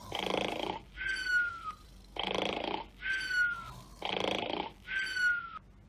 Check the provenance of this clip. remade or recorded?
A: recorded